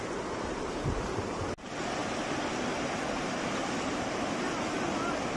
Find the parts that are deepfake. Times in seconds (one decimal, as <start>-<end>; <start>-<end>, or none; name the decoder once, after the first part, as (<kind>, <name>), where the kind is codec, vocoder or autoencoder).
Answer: none